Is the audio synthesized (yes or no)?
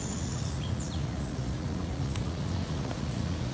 yes